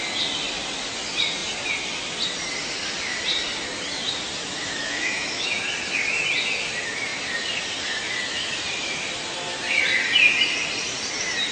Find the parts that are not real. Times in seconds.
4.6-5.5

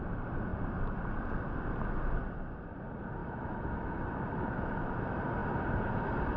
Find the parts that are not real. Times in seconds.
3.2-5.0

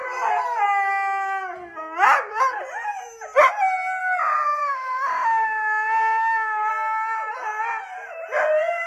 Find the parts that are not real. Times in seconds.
4.6-6.7

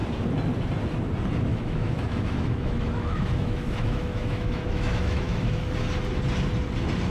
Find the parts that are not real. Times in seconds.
1.5-5.7